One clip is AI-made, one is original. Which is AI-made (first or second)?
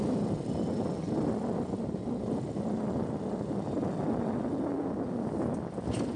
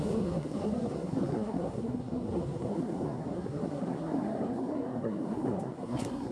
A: second